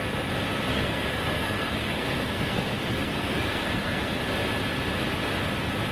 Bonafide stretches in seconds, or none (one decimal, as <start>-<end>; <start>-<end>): 0.0-0.7; 4.2-5.9